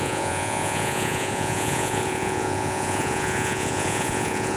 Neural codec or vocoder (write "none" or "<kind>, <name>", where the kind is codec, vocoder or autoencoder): vocoder, Vocos